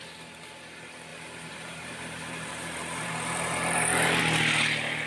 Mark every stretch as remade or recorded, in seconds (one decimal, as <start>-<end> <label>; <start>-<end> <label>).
0.0-1.1 recorded; 1.1-4.2 remade; 4.2-5.1 recorded